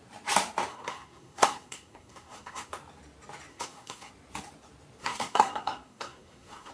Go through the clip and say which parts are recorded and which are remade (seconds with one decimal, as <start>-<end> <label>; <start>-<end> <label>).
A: 0.0-0.7 recorded; 0.7-2.7 remade; 2.7-3.5 recorded; 3.5-4.1 remade; 4.1-5.0 recorded; 5.0-6.7 remade

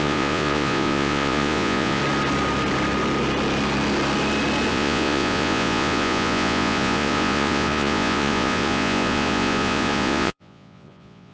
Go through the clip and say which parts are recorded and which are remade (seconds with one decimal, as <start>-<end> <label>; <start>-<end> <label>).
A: 0.0-2.0 remade; 2.0-4.7 recorded; 4.7-11.3 remade

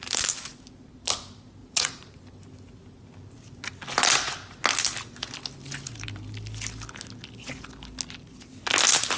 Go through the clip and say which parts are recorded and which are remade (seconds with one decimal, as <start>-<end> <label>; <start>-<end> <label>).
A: 0.0-1.6 recorded; 1.6-2.2 remade; 2.2-9.2 recorded